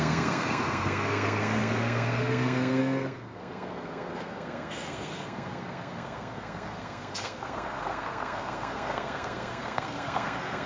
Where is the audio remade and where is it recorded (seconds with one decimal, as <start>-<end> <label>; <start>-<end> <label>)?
0.0-10.7 remade